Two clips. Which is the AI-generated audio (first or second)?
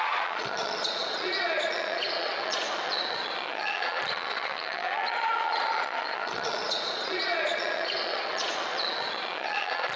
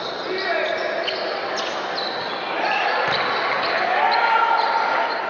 first